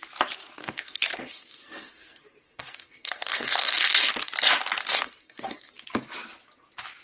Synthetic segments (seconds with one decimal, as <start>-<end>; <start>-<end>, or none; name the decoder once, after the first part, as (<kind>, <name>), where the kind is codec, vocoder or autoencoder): 0.6-4.1 (codec, SNAC); 4.9-5.7